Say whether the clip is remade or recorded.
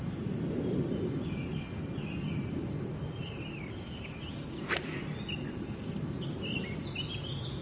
recorded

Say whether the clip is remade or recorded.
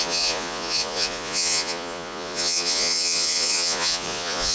remade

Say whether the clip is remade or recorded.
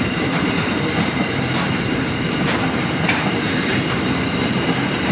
remade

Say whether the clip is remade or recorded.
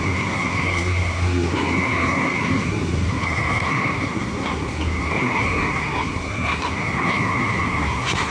remade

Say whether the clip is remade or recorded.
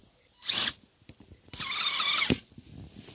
recorded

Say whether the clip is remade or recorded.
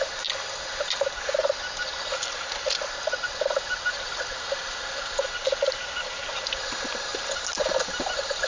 recorded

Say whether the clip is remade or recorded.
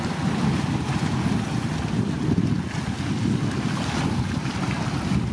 recorded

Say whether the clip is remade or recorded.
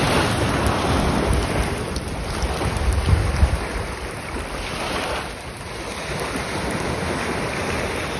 recorded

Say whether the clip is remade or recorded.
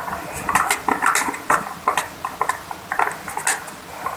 recorded